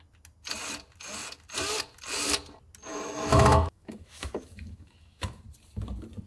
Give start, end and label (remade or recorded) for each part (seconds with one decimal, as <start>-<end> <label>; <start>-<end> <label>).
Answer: 0.0-2.9 recorded; 2.9-5.4 remade; 5.4-6.3 recorded